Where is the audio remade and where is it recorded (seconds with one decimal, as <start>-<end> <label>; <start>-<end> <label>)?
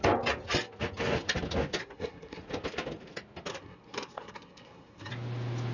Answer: 0.0-1.8 recorded; 1.8-2.4 remade; 2.4-3.5 recorded; 3.5-5.1 remade; 5.1-5.7 recorded